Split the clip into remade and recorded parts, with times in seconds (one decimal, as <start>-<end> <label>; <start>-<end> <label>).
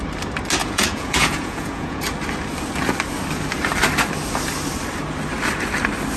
0.0-0.6 recorded; 0.6-2.0 remade; 2.0-6.2 recorded